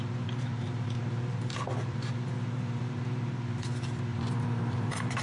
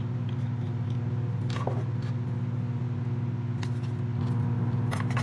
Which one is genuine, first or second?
second